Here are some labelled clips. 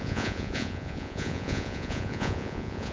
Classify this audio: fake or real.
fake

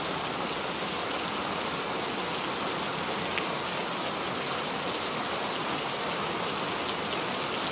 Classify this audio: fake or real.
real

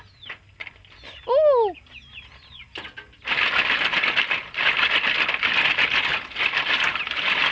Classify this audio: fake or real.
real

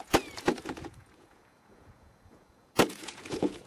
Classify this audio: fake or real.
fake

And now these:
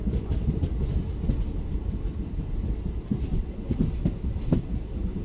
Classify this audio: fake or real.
real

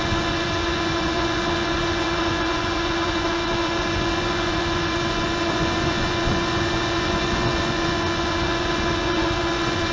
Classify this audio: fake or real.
fake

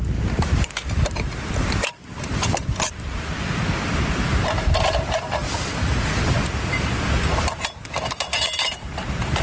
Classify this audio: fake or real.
real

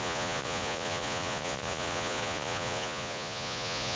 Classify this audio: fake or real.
fake